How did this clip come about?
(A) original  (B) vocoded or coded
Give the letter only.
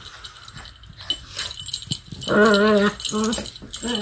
A